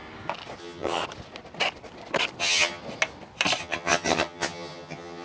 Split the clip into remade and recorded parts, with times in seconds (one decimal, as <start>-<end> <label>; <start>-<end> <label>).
0.0-0.6 recorded; 0.6-1.0 remade; 1.0-2.4 recorded; 2.4-2.8 remade; 2.8-3.6 recorded; 3.6-5.2 remade